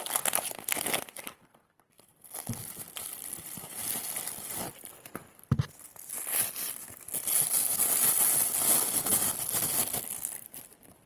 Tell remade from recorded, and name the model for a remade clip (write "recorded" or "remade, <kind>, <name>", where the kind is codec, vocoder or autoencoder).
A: recorded